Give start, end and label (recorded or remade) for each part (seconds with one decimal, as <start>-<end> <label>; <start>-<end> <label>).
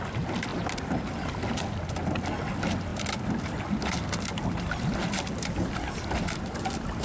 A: 0.0-7.0 recorded